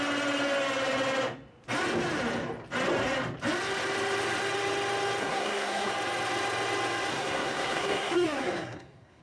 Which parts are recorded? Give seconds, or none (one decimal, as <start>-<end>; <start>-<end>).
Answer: 0.0-5.2; 5.9-7.1